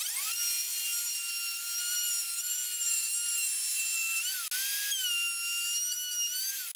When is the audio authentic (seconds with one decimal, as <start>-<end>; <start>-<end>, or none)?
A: 0.9-1.8; 3.1-6.8